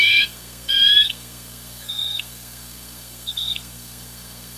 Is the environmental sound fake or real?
fake